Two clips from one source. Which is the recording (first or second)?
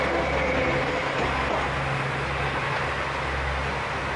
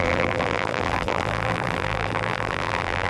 first